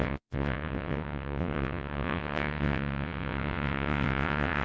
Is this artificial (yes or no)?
yes